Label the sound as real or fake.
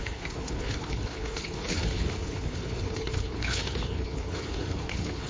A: fake